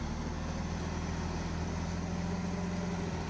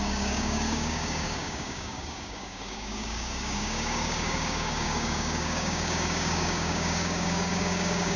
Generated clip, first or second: second